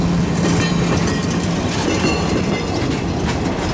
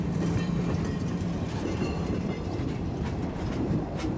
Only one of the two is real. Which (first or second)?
first